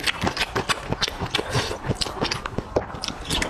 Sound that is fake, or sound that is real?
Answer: fake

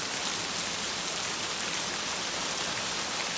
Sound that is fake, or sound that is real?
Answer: real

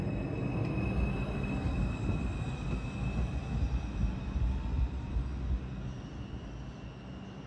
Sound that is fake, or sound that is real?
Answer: real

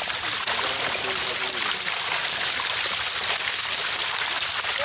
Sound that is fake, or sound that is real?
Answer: fake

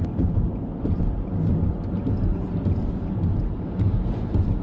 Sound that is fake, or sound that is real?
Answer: fake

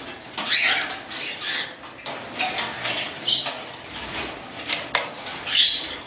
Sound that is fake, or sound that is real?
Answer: real